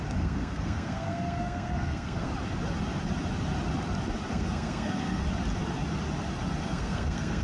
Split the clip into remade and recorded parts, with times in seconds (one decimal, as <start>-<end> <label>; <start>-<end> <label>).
0.0-2.3 remade; 2.3-4.3 recorded; 4.3-5.2 remade; 5.2-6.6 recorded; 6.6-7.4 remade